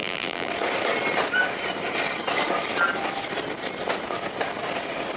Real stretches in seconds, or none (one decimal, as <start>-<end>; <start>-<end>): 0.5-5.2